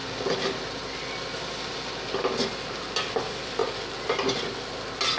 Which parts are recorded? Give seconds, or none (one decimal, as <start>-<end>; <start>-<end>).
0.0-5.2